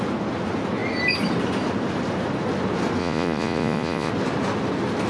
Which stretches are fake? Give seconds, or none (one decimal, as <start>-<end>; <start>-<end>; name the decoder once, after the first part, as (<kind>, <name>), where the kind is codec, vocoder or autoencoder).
3.0-4.1 (vocoder, Vocos)